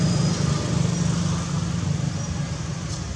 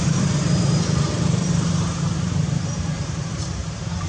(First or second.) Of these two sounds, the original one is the first